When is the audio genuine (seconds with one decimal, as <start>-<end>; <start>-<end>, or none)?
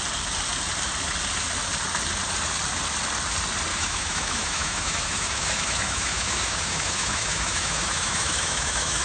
0.0-3.7